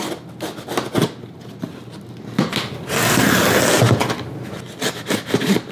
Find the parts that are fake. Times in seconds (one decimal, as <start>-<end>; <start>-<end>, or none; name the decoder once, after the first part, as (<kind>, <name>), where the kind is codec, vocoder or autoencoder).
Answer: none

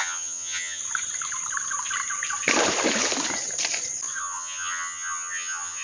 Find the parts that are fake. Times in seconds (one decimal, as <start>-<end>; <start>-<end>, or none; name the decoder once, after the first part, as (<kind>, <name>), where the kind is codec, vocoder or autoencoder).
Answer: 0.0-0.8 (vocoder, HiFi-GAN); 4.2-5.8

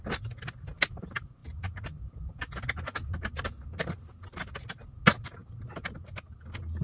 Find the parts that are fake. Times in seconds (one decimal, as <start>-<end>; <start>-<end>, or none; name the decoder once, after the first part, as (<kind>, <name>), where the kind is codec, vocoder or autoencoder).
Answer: none

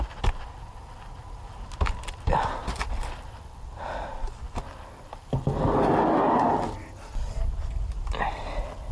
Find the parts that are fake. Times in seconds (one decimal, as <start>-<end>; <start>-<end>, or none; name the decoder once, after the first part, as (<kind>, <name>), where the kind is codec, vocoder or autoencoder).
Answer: none